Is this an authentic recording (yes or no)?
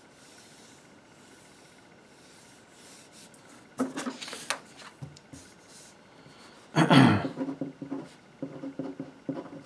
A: yes